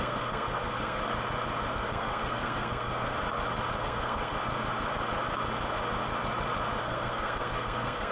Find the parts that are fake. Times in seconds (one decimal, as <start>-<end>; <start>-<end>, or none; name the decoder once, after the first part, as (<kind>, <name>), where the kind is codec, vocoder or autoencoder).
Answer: 0.0-1.0 (codec, SNAC); 1.7-3.1; 3.8-4.3; 6.8-8.1